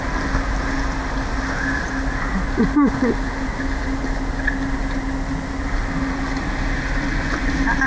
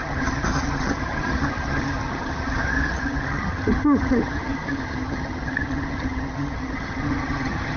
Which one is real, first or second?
first